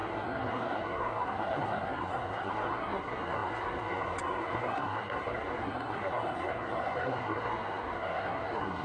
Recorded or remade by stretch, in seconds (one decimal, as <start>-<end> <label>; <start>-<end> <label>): 0.0-8.8 remade